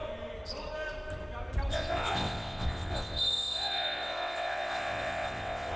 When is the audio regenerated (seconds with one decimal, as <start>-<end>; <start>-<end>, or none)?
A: 1.7-5.8